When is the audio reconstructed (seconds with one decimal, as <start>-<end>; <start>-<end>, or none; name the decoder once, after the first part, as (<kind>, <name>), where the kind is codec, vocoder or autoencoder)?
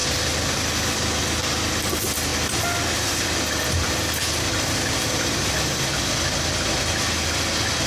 none